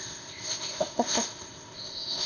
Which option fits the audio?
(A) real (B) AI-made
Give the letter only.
B